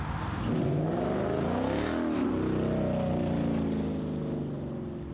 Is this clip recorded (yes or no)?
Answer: yes